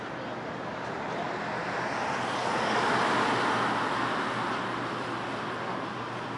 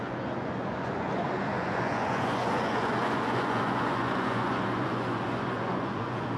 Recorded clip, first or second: first